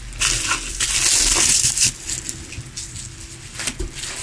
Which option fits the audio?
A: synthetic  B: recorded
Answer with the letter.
B